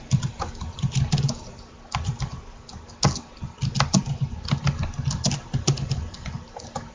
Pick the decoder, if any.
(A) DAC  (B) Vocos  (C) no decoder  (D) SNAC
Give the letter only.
C